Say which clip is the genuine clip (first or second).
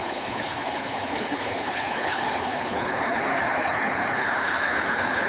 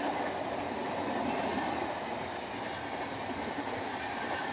second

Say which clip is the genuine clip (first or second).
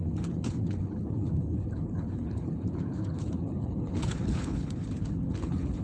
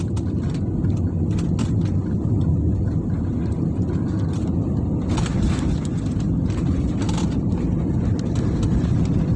second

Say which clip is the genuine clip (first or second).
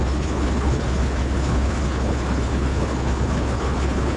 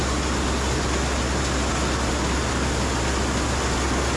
second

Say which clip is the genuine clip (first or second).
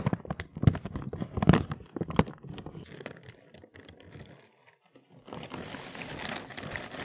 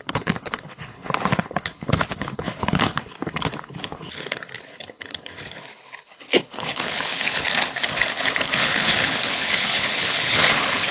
first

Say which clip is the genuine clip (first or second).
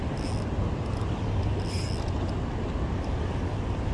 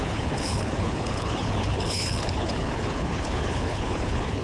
first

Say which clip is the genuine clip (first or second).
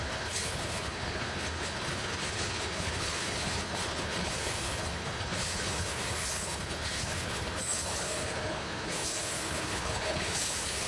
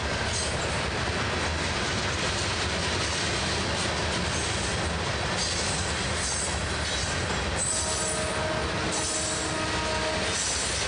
second